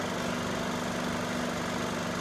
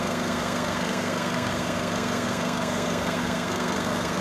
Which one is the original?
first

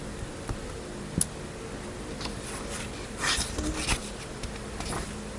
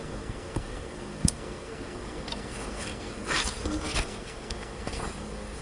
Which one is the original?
first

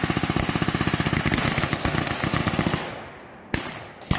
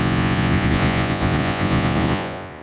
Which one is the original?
first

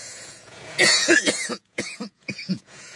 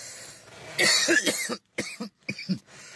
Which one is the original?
second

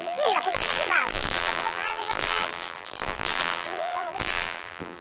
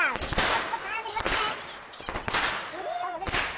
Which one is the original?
second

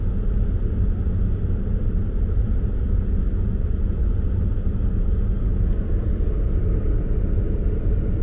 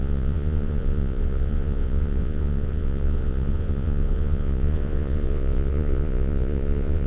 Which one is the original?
first